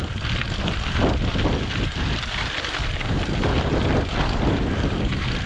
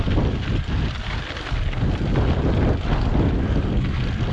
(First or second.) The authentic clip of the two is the second